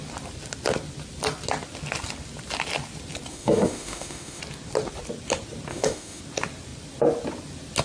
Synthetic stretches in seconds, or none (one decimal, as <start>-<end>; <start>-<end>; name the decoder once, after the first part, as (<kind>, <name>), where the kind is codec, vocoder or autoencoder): 3.3-4.4 (autoencoder, DAC-VAE); 5.7-6.2